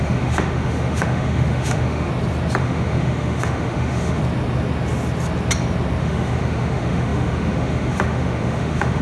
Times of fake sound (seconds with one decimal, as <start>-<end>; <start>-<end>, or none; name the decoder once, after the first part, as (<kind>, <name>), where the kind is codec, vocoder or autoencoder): 0.0-2.1 (autoencoder, DAC-VAE); 2.6-4.2; 6.0-9.0

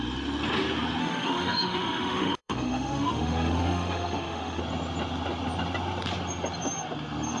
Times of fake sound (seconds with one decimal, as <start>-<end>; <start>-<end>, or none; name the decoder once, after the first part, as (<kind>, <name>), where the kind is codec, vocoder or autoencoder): 1.0-4.6 (autoencoder, DAC-VAE)

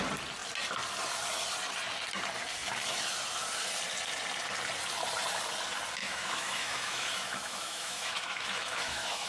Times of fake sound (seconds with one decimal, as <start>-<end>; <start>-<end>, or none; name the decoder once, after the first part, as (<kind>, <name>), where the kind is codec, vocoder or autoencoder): 6.0-9.3 (autoencoder, DAC-VAE)

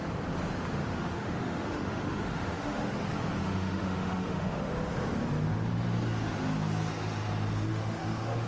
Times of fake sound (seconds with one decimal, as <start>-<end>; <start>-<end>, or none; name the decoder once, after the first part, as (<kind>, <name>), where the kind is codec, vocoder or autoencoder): 0.8-2.9 (autoencoder, DAC-VAE); 3.4-4.7; 7.7-8.5